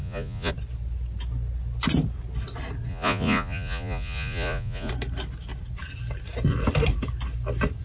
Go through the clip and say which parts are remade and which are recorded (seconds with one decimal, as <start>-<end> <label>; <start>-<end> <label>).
0.0-0.5 remade; 0.5-2.9 recorded; 2.9-4.9 remade; 4.9-7.8 recorded